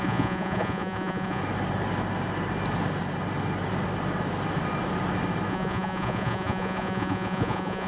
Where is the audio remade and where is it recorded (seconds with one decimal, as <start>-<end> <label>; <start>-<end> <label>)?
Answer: 0.0-1.4 remade; 1.4-5.5 recorded; 5.5-7.9 remade